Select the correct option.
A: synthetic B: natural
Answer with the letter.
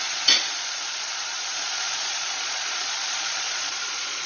A